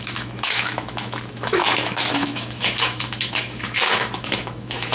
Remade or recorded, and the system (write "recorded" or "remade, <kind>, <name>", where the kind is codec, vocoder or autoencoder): remade, autoencoder, DAC-VAE